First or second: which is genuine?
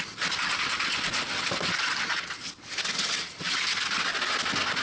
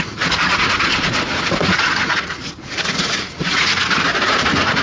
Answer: first